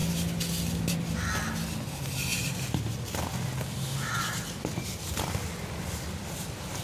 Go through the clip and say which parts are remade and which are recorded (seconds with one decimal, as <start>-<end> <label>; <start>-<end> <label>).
0.0-6.8 recorded